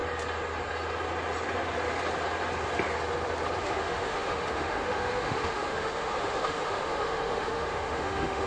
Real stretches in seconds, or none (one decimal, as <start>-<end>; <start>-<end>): 0.0-3.6